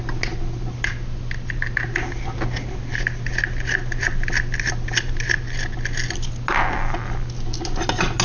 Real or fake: real